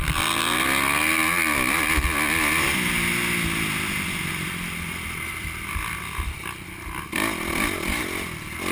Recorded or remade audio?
recorded